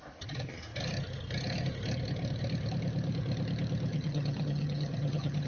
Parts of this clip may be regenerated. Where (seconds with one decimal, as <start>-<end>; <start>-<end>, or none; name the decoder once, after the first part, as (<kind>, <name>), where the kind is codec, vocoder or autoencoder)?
3.9-5.5 (vocoder, HiFi-GAN)